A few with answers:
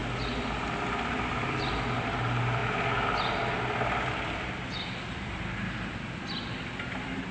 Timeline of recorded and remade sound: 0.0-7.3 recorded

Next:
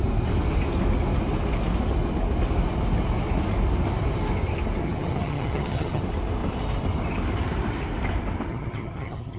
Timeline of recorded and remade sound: 0.0-4.8 recorded; 4.8-6.0 remade; 6.0-8.5 recorded; 8.5-9.4 remade